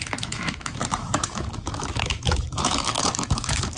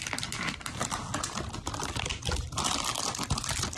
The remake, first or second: first